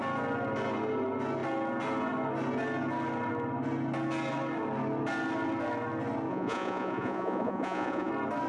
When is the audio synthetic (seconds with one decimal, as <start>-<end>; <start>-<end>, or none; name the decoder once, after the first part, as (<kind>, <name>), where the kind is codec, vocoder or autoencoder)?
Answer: 6.3-8.1 (vocoder, Vocos)